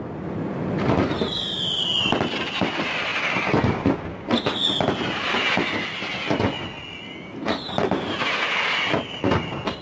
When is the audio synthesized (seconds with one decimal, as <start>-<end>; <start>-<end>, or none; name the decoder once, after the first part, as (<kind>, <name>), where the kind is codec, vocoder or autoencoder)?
none